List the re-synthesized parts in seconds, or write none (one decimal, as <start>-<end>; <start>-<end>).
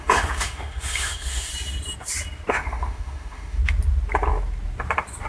0.0-1.5; 2.5-3.6